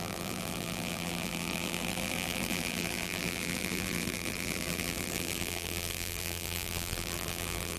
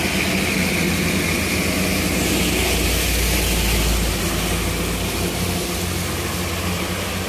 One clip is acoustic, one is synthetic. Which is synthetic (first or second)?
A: first